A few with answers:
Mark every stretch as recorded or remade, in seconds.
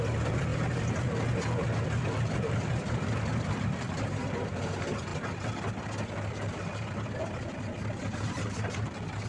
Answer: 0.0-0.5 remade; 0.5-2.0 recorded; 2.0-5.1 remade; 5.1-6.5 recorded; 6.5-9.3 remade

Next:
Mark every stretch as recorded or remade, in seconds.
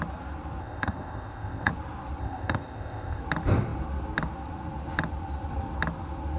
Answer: 0.0-0.6 recorded; 0.6-1.7 remade; 1.7-2.2 recorded; 2.2-3.2 remade; 3.2-6.4 recorded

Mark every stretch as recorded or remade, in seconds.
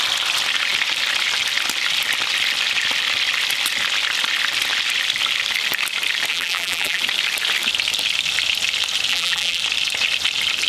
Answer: 0.0-6.3 recorded; 6.3-7.0 remade; 7.0-9.1 recorded; 9.1-9.6 remade; 9.6-10.7 recorded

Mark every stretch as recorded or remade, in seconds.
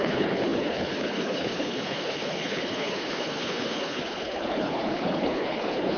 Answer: 0.0-6.0 remade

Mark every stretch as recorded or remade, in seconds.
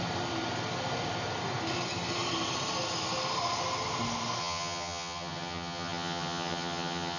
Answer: 0.0-4.4 recorded; 4.4-7.2 remade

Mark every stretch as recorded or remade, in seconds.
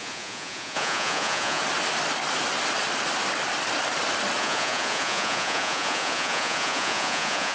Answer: 0.0-1.6 remade; 1.6-4.4 recorded; 4.4-7.5 remade